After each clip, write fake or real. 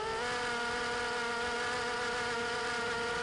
real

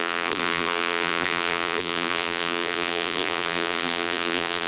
fake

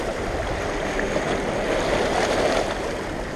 real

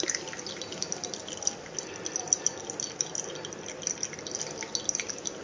real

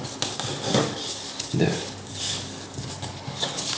fake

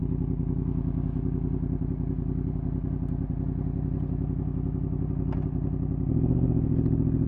real